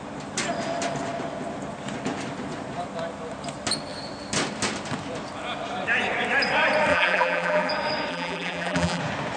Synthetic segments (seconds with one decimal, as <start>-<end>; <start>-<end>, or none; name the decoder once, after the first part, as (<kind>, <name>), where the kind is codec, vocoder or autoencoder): 6.9-7.7 (vocoder, BigVGAN v2); 8.1-9.0